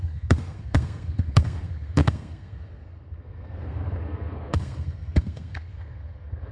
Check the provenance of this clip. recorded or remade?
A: remade